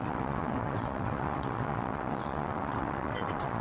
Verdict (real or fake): fake